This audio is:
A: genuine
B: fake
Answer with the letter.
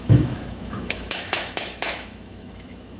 B